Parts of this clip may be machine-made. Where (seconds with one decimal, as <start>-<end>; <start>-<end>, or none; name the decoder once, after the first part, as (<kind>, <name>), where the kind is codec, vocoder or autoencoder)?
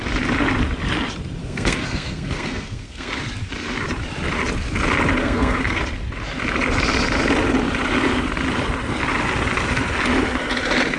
1.4-3.2 (codec, SNAC); 5.2-5.8